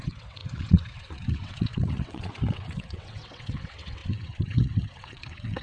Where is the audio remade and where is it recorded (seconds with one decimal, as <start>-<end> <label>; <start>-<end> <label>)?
0.0-5.6 remade